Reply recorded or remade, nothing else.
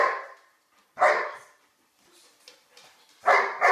recorded